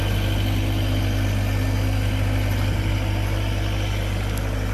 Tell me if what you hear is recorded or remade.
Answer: recorded